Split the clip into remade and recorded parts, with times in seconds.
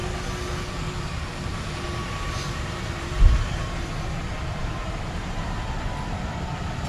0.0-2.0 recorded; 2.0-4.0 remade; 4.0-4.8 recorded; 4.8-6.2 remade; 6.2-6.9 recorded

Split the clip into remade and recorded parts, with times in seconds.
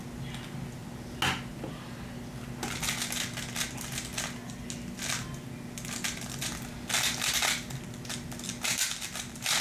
0.0-9.6 recorded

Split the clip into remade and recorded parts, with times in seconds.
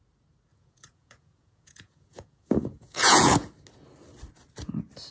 0.0-0.5 recorded; 0.5-3.5 remade; 3.5-5.1 recorded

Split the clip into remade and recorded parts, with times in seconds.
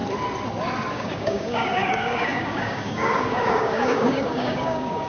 0.0-0.9 recorded; 0.9-5.1 remade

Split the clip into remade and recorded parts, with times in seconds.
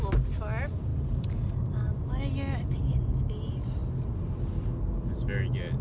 0.0-5.8 recorded